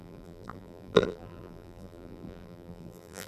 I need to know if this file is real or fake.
fake